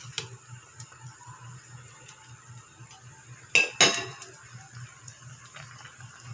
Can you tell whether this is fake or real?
real